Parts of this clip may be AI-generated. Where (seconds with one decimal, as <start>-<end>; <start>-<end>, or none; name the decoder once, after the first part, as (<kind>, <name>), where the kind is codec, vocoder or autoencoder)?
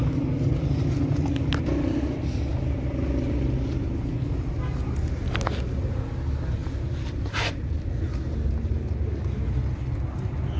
none